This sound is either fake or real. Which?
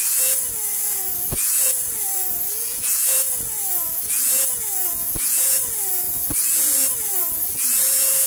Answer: fake